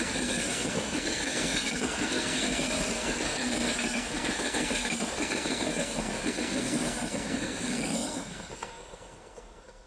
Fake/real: fake